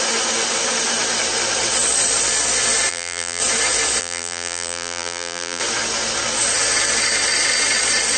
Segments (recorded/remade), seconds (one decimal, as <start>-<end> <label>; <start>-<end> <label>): 0.0-2.9 recorded; 2.9-3.4 remade; 3.4-4.0 recorded; 4.0-5.6 remade; 5.6-8.2 recorded